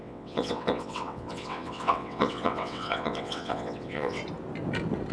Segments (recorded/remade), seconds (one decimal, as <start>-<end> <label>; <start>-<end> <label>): 0.0-4.2 remade; 4.2-5.1 recorded